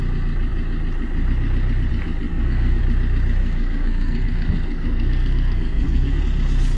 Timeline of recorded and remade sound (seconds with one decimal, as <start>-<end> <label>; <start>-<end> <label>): 0.0-2.3 recorded; 2.3-2.8 remade; 2.8-3.4 recorded; 3.4-6.2 remade; 6.2-6.8 recorded